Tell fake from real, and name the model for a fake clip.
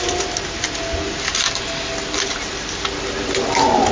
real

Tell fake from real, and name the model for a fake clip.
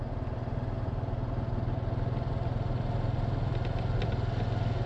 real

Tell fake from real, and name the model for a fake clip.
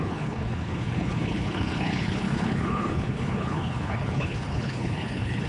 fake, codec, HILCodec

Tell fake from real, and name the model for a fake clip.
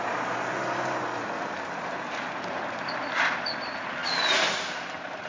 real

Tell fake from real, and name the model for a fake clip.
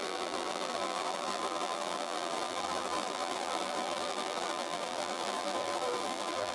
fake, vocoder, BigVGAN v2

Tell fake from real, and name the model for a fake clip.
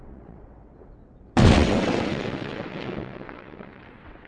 fake, vocoder, WaveNeXt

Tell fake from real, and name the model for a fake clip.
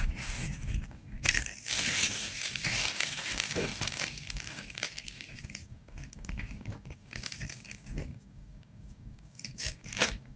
fake, codec, DAC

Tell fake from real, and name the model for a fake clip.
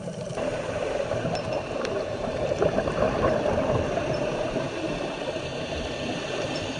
fake, vocoder, BigVGAN v2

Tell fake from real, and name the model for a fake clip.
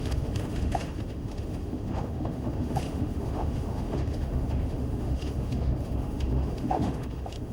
fake, autoencoder, DAC-VAE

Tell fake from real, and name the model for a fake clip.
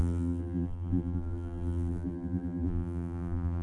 fake, vocoder, BigVGAN v2